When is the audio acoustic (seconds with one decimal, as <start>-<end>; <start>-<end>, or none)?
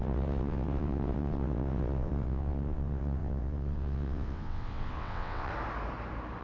5.5-6.4